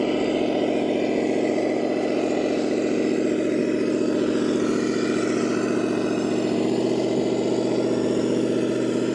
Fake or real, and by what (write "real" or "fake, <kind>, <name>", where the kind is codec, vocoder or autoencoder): real